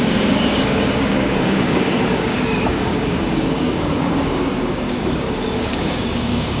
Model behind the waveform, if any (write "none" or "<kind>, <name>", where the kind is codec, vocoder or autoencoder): codec, DAC